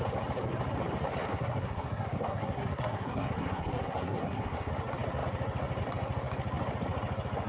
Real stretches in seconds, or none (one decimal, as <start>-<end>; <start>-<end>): 0.0-1.3; 4.7-7.5